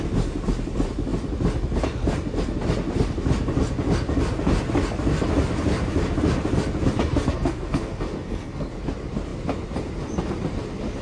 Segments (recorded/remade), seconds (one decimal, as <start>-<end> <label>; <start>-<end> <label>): 0.0-7.1 recorded; 7.1-8.7 remade; 8.7-11.0 recorded